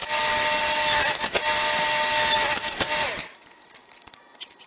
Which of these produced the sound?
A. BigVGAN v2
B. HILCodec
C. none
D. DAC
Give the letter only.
C